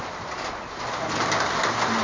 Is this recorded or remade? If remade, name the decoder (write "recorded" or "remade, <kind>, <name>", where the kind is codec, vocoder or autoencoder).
recorded